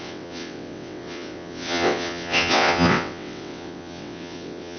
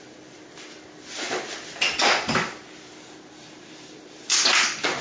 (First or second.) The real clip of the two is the second